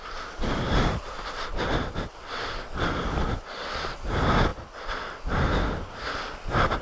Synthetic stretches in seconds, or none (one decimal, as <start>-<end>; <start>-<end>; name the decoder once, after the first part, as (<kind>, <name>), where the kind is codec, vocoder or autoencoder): none

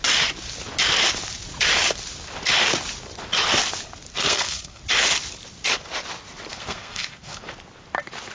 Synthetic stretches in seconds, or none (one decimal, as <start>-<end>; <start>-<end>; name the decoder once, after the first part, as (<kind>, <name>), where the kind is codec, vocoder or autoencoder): 4.1-4.8 (codec, SNAC); 6.5-7.4

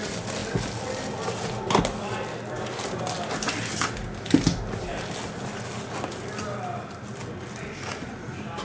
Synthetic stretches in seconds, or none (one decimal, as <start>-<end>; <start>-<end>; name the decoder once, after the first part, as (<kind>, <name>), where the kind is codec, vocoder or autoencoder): none